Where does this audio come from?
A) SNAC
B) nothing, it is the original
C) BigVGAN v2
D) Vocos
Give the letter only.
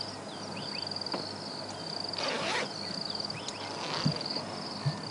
B